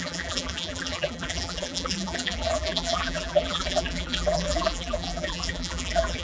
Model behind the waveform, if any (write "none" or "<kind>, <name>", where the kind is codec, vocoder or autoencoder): vocoder, BigVGAN v2